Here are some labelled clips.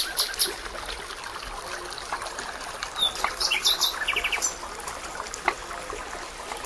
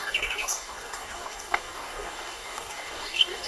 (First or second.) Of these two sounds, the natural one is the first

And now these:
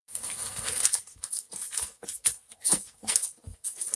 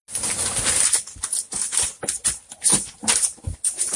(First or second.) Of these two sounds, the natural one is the second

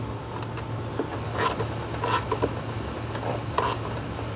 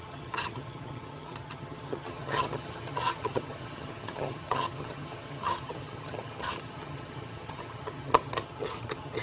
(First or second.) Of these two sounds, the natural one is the first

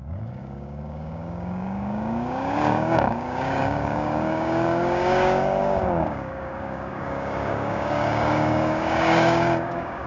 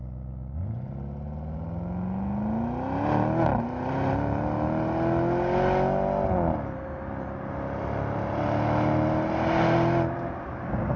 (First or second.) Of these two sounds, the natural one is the second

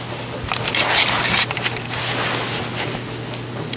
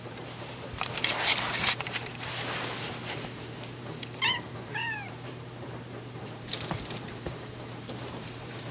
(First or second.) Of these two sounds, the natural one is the first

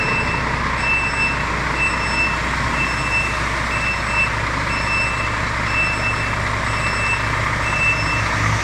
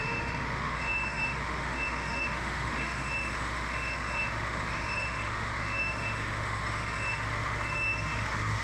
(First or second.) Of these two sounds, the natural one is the first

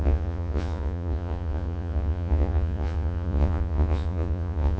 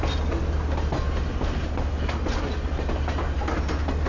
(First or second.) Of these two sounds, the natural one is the second